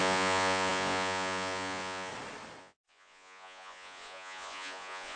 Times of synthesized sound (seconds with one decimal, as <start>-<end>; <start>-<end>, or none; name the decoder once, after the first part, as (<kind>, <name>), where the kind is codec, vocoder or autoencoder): 0.0-2.1 (vocoder, Vocos); 2.6-5.2